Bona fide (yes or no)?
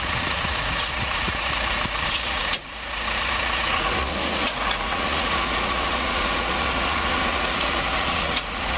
no